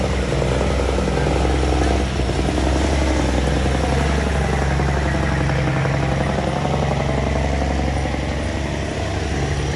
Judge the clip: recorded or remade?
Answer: recorded